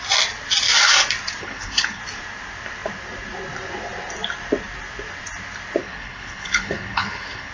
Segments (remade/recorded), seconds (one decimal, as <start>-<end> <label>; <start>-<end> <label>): 0.0-1.4 recorded; 1.4-2.0 remade; 2.0-5.8 recorded; 5.8-7.5 remade